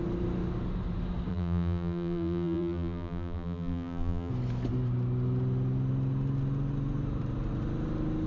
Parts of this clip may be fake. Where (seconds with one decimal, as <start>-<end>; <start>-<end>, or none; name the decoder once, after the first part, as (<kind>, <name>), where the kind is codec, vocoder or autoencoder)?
1.3-4.3 (vocoder, BigVGAN v2)